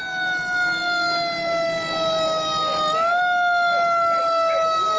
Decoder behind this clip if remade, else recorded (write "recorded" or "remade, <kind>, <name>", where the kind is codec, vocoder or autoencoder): recorded